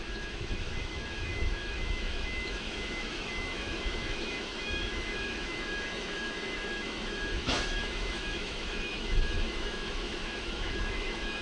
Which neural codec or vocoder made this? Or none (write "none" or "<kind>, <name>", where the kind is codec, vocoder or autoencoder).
autoencoder, DAC-VAE